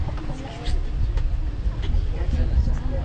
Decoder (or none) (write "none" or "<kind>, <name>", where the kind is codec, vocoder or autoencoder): none